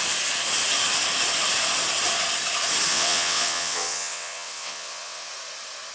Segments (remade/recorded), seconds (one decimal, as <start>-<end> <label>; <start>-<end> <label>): 0.0-2.9 recorded; 2.9-5.3 remade; 5.3-5.9 recorded